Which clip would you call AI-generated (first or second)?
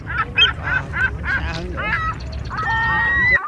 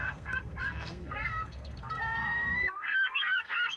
second